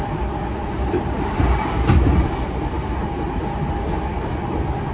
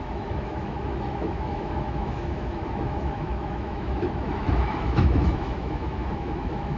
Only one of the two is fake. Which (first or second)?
second